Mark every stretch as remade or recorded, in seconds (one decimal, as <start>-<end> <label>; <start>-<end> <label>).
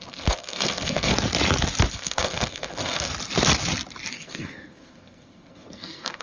0.0-1.1 remade; 1.1-1.9 recorded; 1.9-3.1 remade; 3.1-4.1 recorded; 4.1-6.2 remade